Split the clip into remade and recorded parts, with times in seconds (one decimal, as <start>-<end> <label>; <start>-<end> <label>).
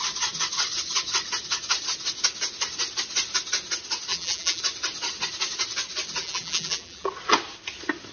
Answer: 0.0-4.1 recorded; 4.1-4.6 remade; 4.6-6.2 recorded; 6.2-7.1 remade; 7.1-8.1 recorded